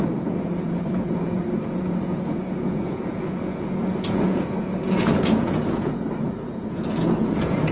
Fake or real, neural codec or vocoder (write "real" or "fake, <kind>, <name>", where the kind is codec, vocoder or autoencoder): fake, vocoder, Vocos